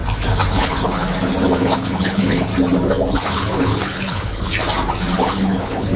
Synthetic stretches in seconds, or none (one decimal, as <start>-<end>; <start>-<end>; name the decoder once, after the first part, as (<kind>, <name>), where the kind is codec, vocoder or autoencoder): 0.5-1.0 (codec, HILCodec); 1.6-2.5; 3.1-4.5; 5.2-6.0